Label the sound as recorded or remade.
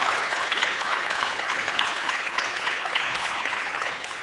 remade